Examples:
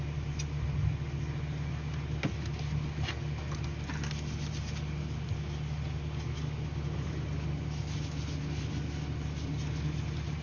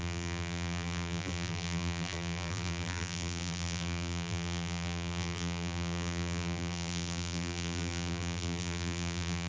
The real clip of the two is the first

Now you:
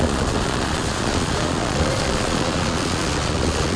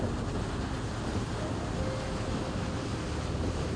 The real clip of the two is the second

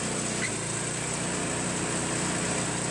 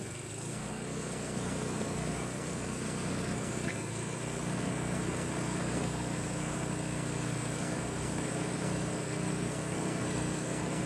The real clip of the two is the first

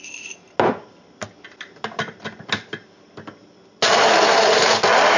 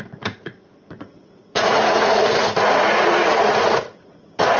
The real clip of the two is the first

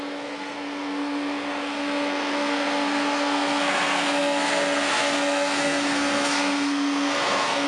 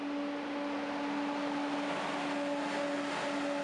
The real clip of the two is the second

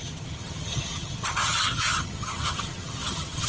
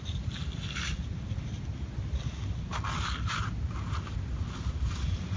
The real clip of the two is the second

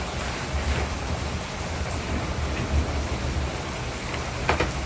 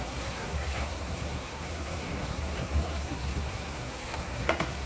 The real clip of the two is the first